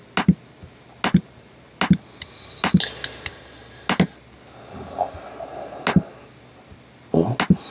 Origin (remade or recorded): recorded